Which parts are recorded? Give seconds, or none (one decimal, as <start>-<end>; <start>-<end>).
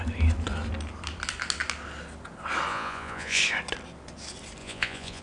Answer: 0.0-2.7; 3.4-4.6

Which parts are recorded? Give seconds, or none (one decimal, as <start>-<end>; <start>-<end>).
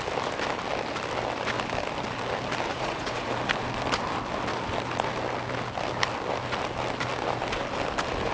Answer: 0.0-2.7; 3.3-8.3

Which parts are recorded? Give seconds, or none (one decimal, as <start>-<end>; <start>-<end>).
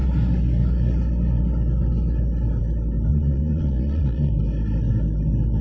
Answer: 0.0-3.1; 4.3-5.6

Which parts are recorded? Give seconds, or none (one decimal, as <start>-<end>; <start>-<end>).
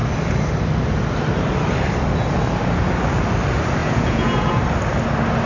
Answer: 0.0-3.8; 4.6-5.5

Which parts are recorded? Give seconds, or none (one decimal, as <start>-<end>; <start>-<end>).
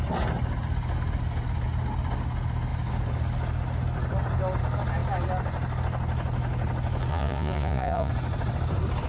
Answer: 0.0-7.1; 8.1-9.1